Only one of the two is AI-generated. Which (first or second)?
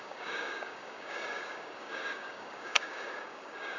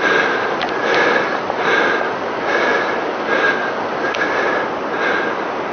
first